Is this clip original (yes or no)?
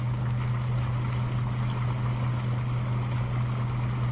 yes